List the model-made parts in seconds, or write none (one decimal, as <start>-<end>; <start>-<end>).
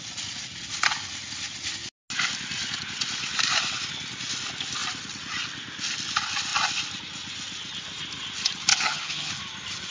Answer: 8.7-9.3